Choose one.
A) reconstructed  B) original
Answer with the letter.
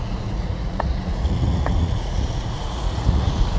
A